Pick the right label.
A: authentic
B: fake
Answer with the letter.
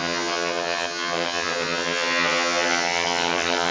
B